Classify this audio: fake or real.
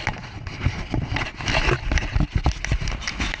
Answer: real